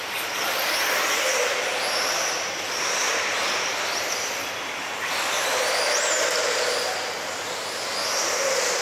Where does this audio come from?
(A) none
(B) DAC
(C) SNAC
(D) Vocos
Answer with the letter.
A